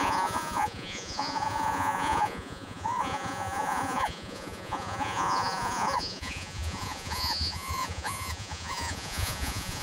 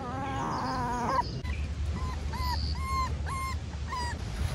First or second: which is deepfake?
first